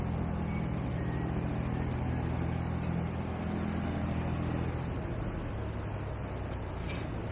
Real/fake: real